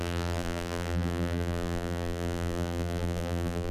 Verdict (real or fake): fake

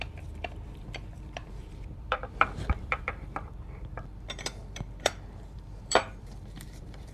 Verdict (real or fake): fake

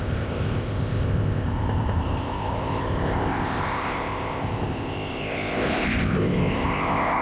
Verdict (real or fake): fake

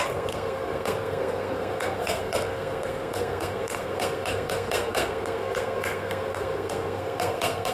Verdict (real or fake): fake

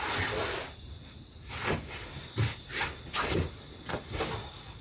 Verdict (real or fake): real